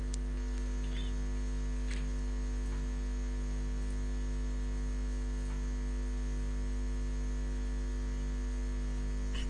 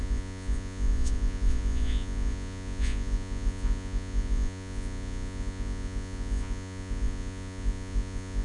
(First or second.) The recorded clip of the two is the first